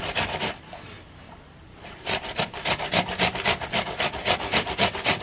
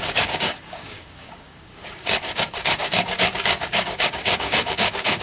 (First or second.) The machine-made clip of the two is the second